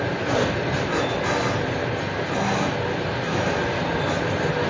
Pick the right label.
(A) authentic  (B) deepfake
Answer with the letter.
A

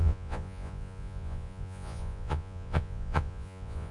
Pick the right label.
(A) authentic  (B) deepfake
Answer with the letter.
B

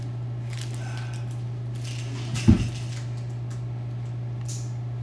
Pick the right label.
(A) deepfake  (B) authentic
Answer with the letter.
B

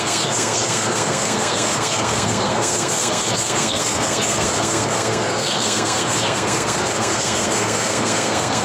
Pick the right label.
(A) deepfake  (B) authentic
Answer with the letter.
A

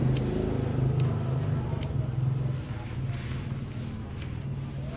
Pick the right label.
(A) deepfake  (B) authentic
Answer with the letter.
B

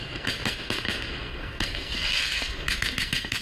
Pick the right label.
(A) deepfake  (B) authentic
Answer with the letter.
A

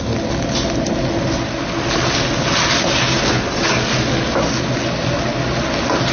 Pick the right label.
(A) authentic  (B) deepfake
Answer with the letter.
A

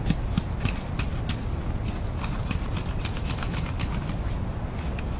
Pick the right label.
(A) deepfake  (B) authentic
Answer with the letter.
B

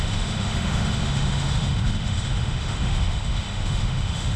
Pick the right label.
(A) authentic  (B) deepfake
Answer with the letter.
B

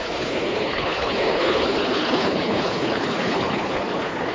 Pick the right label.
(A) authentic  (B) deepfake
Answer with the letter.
B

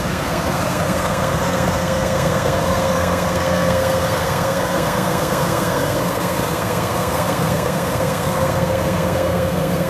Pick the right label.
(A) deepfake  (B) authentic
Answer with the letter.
A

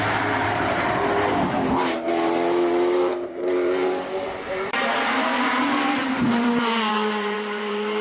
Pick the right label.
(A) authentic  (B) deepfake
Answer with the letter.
B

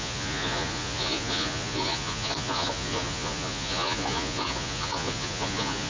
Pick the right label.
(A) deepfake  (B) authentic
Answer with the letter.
A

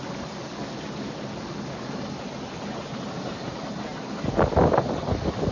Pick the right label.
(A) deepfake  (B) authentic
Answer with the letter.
B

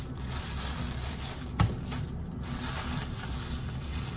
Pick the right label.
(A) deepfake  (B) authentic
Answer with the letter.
B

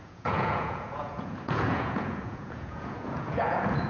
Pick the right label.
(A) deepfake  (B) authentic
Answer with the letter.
A